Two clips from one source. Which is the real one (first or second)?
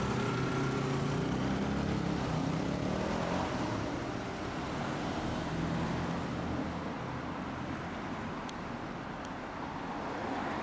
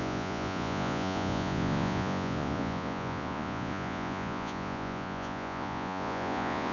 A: first